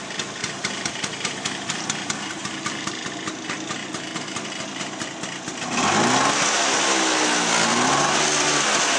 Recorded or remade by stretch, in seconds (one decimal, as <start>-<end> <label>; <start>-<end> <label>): 0.0-0.4 recorded; 0.4-2.9 remade; 2.9-9.0 recorded